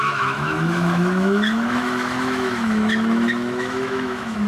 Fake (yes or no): yes